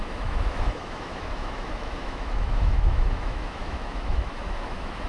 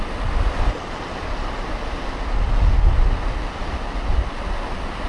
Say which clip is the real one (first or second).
second